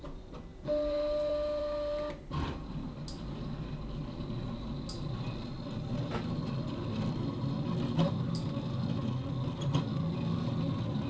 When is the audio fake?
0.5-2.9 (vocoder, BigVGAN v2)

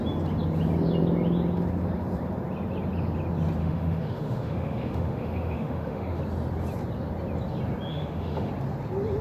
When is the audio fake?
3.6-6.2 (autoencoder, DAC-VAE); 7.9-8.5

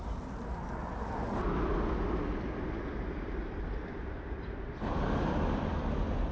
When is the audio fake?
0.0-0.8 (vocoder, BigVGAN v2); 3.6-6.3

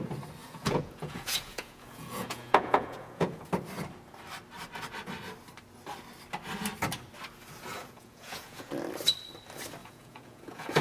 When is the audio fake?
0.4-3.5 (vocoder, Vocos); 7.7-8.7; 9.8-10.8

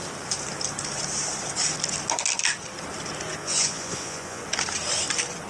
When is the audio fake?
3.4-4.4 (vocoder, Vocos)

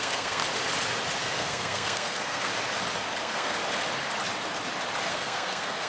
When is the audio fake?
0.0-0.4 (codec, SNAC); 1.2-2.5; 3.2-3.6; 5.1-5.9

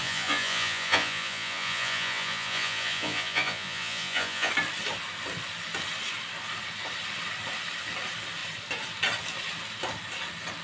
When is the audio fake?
0.0-4.5 (vocoder, Vocos)

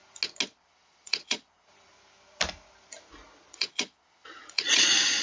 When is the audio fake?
0.6-1.9 (vocoder, Vocos); 3.4-5.2